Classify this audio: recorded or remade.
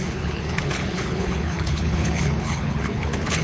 remade